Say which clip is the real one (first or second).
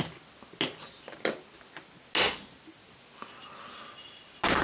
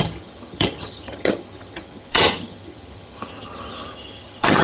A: first